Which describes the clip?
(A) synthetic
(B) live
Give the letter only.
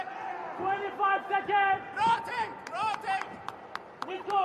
A